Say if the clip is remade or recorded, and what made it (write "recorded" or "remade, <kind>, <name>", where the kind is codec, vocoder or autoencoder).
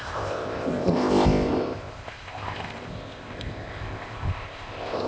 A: remade, codec, ZipCodec